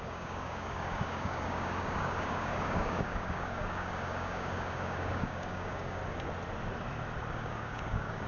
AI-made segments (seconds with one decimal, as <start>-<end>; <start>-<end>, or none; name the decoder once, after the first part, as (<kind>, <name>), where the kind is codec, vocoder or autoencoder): 0.0-6.0 (codec, DAC); 7.3-8.3